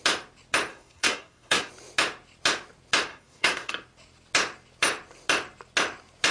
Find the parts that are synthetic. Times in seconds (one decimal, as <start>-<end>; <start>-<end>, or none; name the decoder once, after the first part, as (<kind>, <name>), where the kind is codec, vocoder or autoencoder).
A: 0.7-1.7 (codec, SNAC); 3.1-3.7